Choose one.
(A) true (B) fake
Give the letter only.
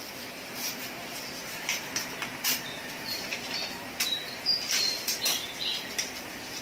B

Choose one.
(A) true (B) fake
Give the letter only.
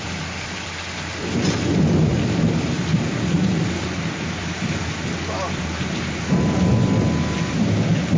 A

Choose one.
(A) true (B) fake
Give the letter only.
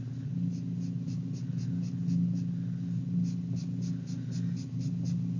A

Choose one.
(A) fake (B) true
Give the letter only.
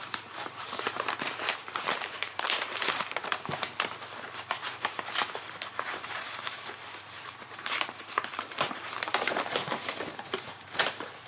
A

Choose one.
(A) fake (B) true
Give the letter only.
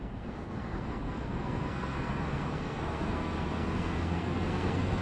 A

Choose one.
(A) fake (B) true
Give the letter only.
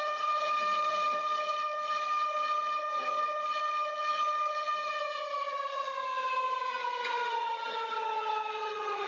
A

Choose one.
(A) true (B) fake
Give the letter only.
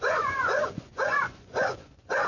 B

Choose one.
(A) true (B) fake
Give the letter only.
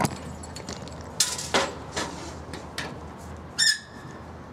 A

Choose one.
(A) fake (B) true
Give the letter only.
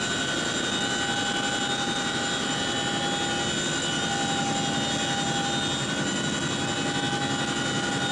B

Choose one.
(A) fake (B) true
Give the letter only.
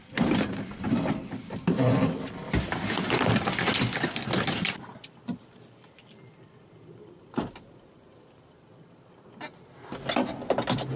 B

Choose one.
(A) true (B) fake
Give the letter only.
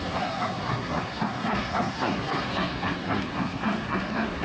B